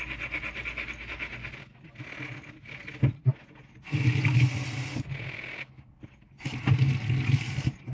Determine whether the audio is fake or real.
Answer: real